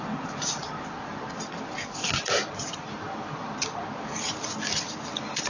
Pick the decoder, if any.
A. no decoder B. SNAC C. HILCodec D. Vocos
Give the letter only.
A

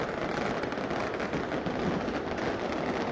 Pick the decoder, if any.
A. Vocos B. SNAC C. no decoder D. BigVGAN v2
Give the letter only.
C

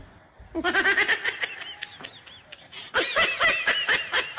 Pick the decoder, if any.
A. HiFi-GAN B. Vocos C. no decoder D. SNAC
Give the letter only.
C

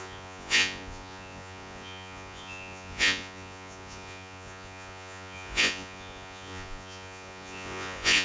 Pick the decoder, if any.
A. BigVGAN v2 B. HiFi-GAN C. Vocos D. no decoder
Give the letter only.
C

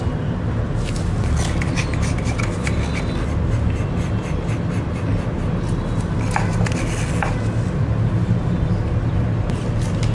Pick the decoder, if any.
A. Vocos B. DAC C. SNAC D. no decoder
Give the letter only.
D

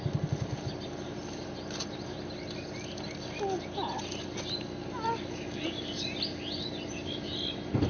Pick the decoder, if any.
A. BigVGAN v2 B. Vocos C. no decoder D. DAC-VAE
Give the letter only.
C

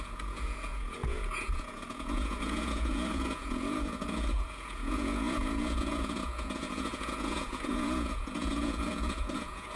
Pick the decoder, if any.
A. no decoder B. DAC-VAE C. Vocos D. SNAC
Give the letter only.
C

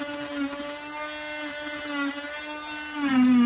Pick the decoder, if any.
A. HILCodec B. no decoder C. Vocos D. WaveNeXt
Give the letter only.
B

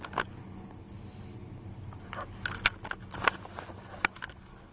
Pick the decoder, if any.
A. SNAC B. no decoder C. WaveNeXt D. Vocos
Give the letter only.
B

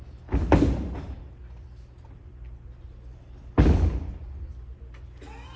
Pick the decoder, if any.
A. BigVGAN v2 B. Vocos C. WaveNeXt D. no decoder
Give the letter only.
D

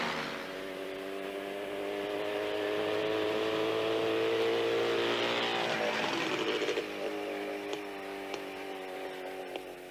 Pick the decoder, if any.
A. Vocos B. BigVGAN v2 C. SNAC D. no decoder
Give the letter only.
D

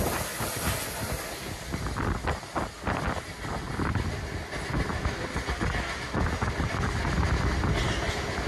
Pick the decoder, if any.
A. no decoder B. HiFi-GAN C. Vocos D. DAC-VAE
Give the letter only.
A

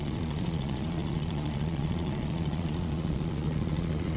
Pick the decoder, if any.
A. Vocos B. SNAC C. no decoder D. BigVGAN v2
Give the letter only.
A